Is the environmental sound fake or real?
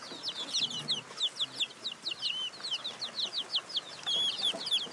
real